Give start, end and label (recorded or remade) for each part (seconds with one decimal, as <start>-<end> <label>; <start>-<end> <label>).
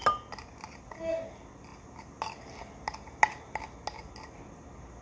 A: 0.0-5.0 recorded